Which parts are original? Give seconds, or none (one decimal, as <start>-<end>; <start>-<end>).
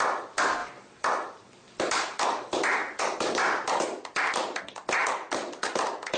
0.0-2.8; 4.6-6.2